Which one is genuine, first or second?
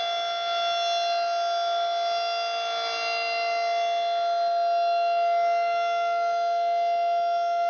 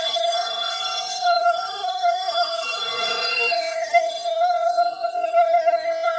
first